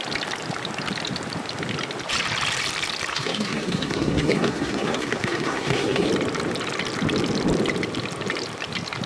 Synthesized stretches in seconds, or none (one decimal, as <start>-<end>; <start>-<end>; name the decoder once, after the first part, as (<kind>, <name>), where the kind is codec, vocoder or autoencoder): 3.1-6.1 (codec, SNAC)